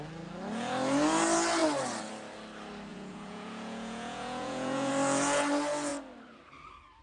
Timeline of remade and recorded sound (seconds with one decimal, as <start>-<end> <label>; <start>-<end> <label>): 0.0-2.9 recorded; 2.9-4.9 remade; 4.9-7.0 recorded